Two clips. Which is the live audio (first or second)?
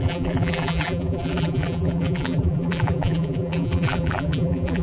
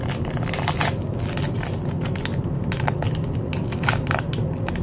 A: second